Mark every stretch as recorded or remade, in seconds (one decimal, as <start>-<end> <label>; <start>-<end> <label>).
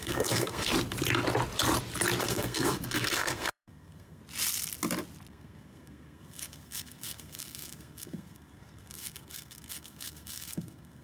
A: 0.0-0.7 remade; 0.7-2.2 recorded; 2.2-4.2 remade; 4.2-5.3 recorded; 5.3-11.0 remade